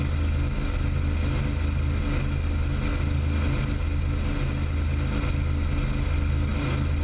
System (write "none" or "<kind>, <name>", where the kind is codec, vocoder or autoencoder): none